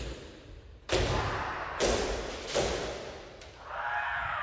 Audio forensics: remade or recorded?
recorded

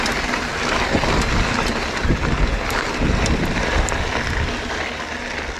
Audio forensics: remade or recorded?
recorded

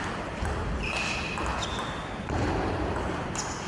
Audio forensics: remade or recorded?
recorded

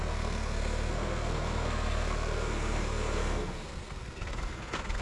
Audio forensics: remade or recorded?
remade